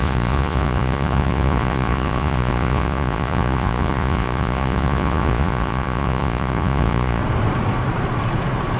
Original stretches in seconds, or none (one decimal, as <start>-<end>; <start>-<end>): 7.2-8.8